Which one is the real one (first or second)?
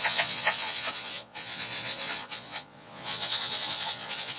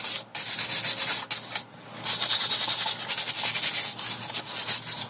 second